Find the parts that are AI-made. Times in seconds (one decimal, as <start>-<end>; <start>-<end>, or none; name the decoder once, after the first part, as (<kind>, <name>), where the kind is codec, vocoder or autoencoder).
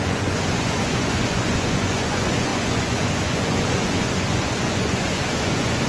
0.0-5.9 (vocoder, Vocos)